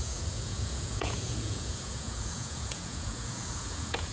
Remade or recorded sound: remade